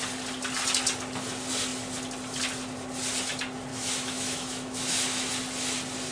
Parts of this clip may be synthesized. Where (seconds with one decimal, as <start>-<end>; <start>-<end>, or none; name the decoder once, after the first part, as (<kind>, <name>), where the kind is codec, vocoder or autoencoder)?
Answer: 3.7-5.3 (autoencoder, DAC-VAE)